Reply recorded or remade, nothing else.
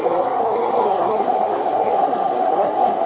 remade